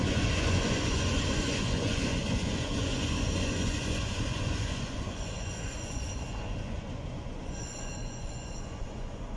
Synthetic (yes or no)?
yes